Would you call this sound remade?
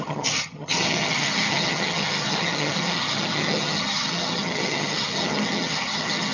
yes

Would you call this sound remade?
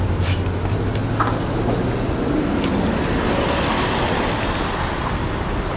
no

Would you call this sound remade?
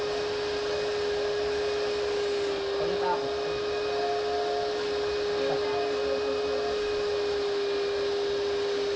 no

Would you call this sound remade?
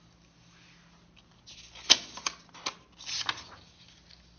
no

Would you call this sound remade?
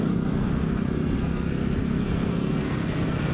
yes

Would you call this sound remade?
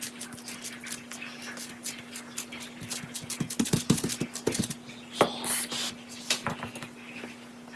no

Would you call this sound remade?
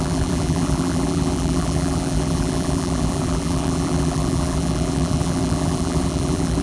yes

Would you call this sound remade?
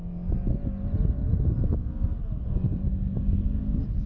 no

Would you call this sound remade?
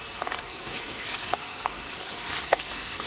yes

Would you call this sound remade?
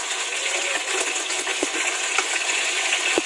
yes